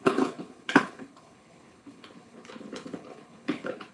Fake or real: fake